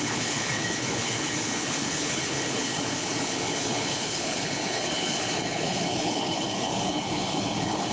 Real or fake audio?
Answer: fake